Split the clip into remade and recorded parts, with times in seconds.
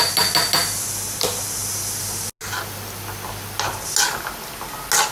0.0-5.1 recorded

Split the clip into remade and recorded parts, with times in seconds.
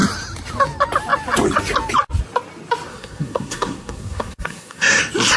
0.0-2.9 recorded; 2.9-5.0 remade; 5.0-5.4 recorded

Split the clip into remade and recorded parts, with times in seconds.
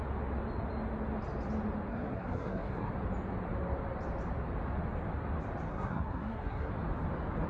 0.0-1.9 recorded; 1.9-2.9 remade; 2.9-5.7 recorded; 5.7-6.7 remade; 6.7-7.5 recorded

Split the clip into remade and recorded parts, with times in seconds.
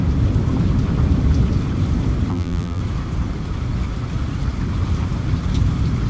0.0-2.3 recorded; 2.3-2.8 remade; 2.8-6.1 recorded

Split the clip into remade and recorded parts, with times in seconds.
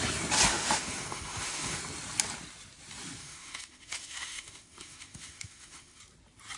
0.0-0.5 recorded; 0.5-1.8 remade; 1.8-3.2 recorded; 3.2-6.0 remade; 6.0-6.6 recorded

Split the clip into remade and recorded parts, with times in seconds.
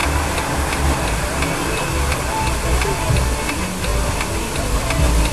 0.0-5.3 recorded